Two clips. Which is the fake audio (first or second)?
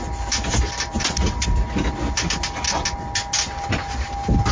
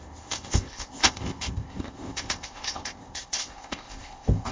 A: second